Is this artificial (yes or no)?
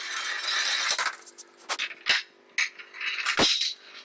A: no